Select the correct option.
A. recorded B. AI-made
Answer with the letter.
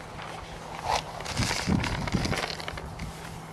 A